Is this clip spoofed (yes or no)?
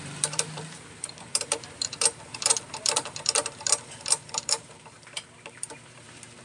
yes